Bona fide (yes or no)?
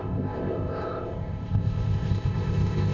no